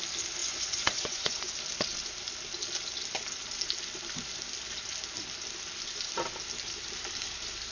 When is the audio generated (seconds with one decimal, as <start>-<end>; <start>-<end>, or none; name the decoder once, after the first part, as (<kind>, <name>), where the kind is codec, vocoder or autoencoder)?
0.4-1.5 (vocoder, Vocos)